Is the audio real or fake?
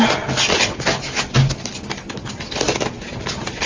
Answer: real